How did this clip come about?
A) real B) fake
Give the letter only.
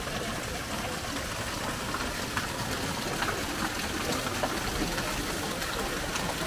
A